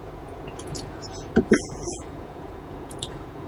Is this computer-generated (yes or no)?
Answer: yes